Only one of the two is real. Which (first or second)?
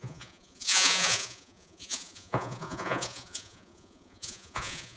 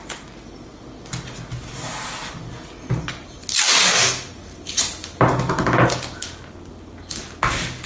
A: second